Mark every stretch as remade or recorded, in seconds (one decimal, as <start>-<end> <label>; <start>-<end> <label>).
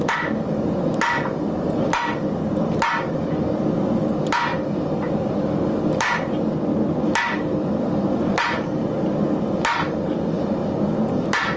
0.0-11.6 recorded